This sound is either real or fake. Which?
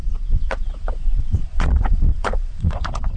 fake